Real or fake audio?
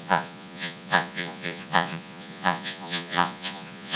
fake